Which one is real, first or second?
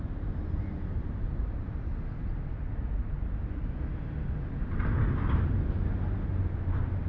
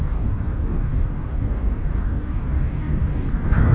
first